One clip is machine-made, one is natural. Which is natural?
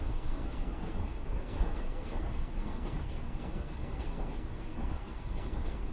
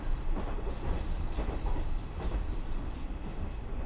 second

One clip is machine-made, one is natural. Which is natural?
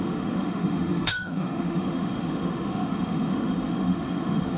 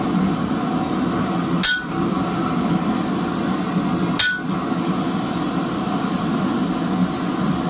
second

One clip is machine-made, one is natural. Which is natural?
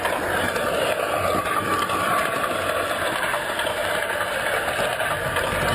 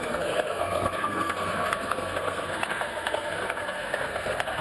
first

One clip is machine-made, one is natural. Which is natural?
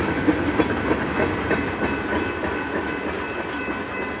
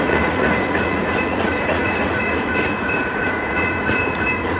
first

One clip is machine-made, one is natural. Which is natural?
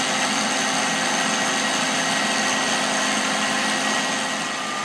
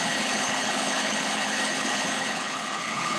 first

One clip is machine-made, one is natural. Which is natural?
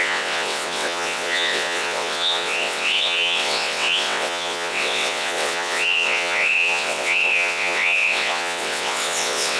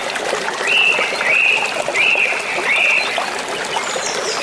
second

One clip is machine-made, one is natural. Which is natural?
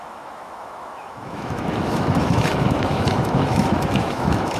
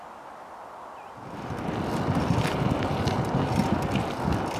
second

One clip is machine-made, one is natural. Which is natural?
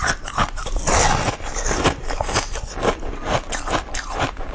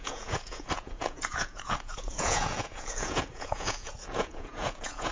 first